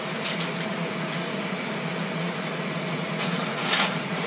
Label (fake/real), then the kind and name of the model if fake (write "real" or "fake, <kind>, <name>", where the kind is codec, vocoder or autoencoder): fake, vocoder, Vocos